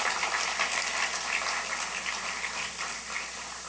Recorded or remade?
recorded